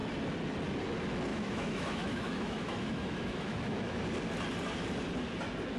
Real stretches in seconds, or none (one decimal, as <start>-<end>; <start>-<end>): 0.0-1.3; 4.0-5.8